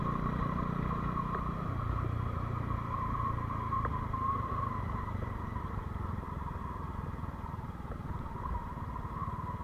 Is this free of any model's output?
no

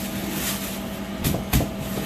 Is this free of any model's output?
yes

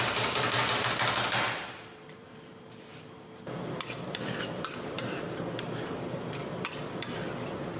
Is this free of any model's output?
no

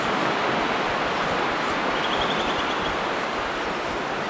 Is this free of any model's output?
yes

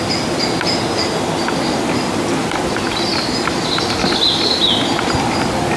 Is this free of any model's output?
yes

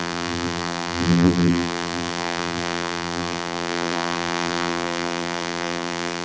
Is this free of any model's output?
no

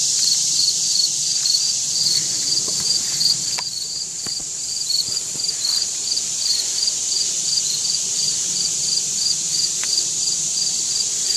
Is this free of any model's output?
no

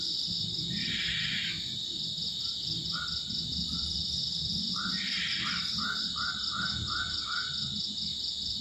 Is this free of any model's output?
yes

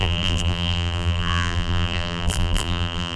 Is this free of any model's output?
no